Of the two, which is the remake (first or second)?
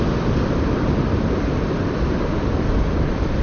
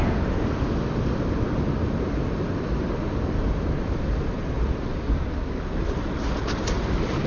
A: first